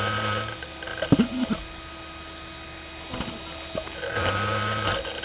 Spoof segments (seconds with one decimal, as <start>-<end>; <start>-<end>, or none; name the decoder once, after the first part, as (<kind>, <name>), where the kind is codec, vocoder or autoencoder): none